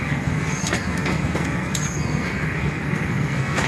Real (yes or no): no